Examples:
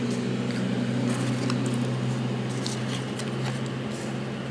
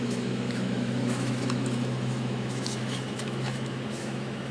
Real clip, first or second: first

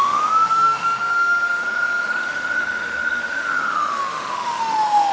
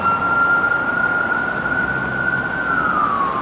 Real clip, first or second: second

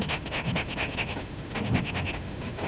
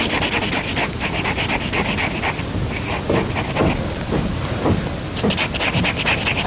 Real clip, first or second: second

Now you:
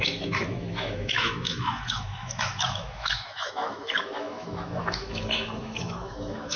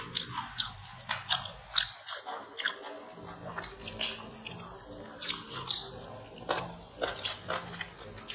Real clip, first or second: second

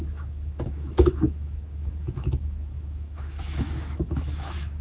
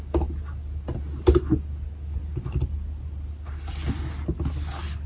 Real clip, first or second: second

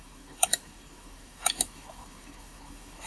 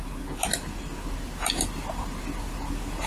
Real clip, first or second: second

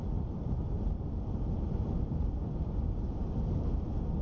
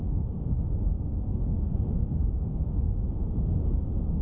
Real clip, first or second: first